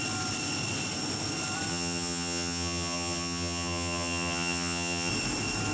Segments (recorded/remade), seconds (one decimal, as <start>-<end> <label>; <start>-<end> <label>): 0.0-1.7 recorded; 1.7-5.1 remade; 5.1-5.7 recorded